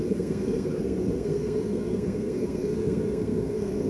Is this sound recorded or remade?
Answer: remade